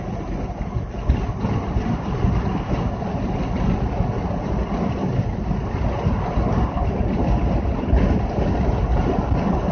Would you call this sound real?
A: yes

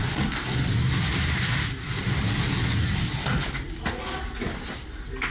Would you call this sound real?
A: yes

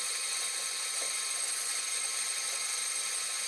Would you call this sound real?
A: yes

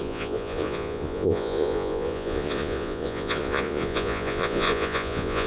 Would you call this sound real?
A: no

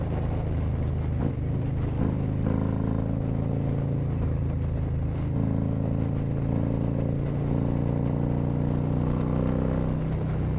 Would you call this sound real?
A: yes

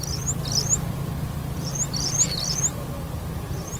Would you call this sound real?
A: yes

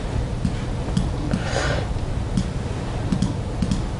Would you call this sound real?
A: yes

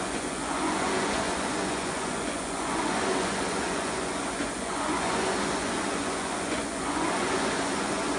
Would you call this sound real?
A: no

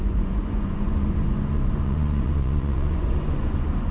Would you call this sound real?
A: no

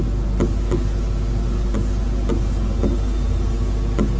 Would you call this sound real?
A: yes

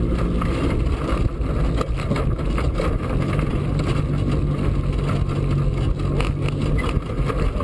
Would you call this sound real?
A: yes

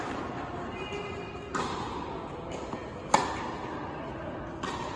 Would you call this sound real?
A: yes